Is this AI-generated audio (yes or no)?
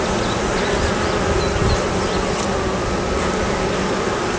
no